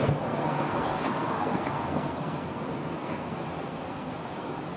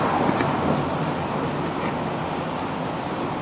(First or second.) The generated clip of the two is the first